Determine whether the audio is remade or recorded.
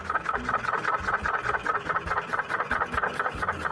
recorded